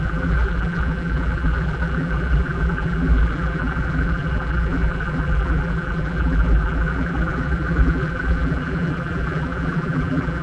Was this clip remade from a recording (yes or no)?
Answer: yes